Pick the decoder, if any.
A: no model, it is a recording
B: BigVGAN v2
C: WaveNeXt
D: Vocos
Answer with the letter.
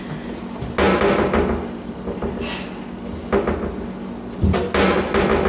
A